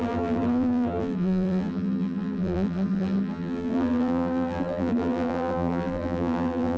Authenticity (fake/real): fake